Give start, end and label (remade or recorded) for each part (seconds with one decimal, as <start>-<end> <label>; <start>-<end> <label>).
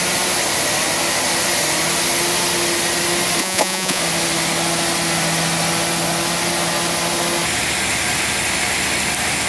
0.0-3.4 recorded; 3.4-4.0 remade; 4.0-9.5 recorded